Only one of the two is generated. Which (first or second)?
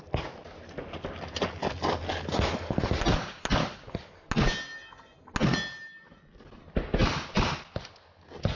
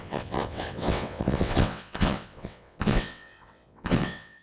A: second